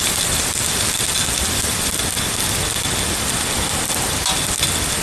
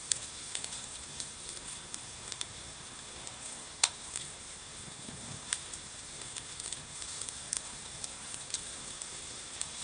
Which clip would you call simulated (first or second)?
second